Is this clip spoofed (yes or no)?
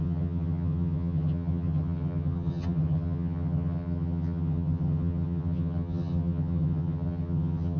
yes